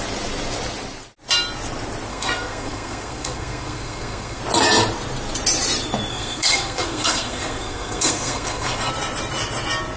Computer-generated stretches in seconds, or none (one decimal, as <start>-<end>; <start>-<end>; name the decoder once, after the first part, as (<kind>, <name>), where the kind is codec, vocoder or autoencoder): 2.1-4.4 (codec, SNAC); 6.1-8.9